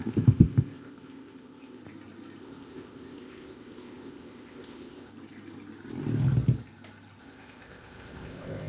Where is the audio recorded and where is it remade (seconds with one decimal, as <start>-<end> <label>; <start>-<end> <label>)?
0.0-1.8 remade; 1.8-2.4 recorded; 2.4-5.1 remade; 5.1-7.2 recorded; 7.2-8.7 remade